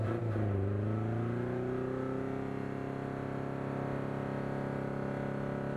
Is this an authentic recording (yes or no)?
yes